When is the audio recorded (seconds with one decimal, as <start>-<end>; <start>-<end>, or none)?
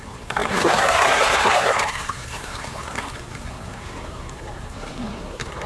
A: none